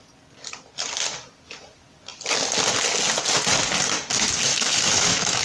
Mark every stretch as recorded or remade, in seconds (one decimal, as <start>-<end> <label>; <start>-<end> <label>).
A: 0.0-4.5 recorded; 4.5-5.4 remade